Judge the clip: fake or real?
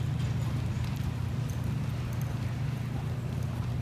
real